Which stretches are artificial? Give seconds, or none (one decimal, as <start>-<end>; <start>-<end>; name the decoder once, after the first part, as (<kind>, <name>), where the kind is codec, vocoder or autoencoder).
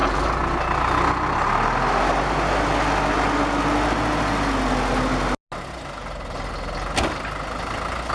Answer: none